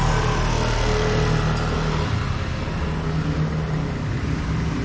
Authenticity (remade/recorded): recorded